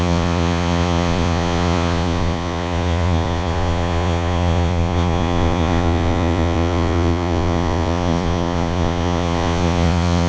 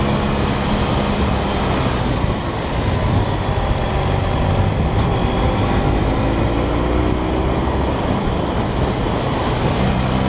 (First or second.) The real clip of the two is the second